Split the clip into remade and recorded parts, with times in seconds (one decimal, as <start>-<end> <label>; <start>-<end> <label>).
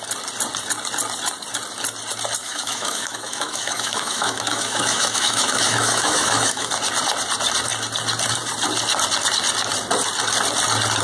0.0-2.4 recorded; 2.4-6.7 remade; 6.7-11.0 recorded